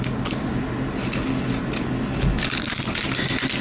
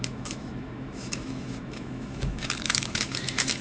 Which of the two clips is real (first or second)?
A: first